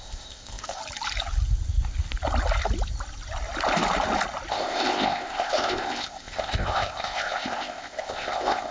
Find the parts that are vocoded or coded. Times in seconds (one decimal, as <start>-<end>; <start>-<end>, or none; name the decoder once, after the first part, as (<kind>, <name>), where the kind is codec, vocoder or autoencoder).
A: 0.0-0.8 (codec, ZipCodec); 4.5-8.7